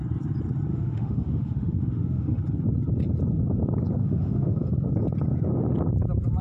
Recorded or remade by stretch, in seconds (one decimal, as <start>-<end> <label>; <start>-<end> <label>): 0.0-0.7 recorded; 0.7-2.4 remade; 2.4-4.0 recorded; 4.0-4.7 remade; 4.7-6.4 recorded

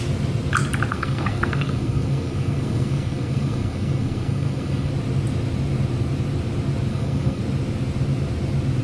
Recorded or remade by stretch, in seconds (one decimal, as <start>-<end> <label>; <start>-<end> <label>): 0.0-0.9 recorded; 0.9-4.9 remade; 4.9-6.9 recorded; 6.9-7.4 remade; 7.4-8.8 recorded

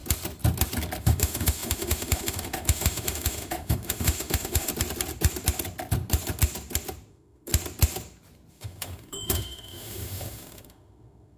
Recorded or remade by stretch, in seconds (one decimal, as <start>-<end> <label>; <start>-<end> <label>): 0.0-1.0 recorded; 1.0-4.7 remade; 4.7-7.1 recorded; 7.1-7.5 remade; 7.5-8.5 recorded; 8.5-11.4 remade

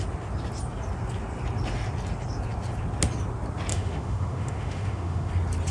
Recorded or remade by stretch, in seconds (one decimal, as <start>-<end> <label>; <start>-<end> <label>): 0.0-3.7 recorded; 3.7-5.3 remade; 5.3-5.7 recorded

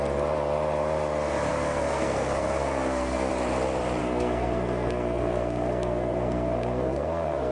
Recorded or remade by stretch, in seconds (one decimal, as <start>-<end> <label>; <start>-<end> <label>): 0.0-1.5 recorded; 1.5-3.3 remade; 3.3-4.0 recorded; 4.0-7.5 remade